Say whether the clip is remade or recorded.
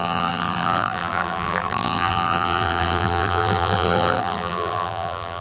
remade